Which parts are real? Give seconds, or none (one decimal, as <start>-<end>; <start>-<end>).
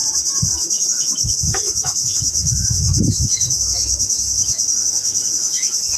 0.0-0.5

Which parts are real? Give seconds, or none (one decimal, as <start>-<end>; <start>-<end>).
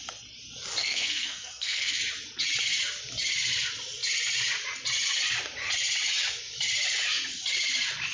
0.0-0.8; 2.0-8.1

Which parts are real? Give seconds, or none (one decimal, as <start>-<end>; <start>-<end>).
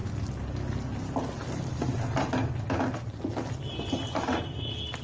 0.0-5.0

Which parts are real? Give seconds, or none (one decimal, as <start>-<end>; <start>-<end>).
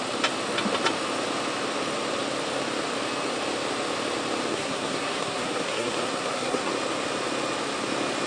0.0-4.5; 6.7-8.3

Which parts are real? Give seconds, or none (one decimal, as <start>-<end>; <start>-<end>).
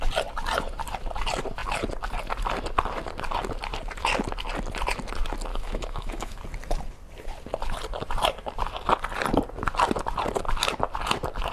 0.0-5.5; 6.4-11.5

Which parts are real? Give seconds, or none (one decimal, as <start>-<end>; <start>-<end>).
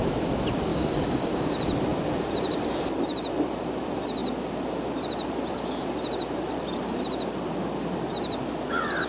0.0-0.7; 1.5-9.1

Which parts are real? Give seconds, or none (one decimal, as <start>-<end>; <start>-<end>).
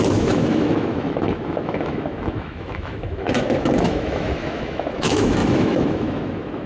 none